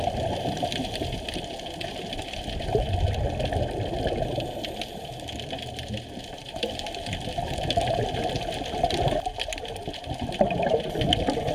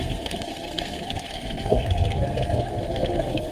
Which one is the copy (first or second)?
second